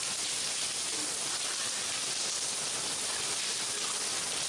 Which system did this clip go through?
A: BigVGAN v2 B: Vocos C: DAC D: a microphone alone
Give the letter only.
A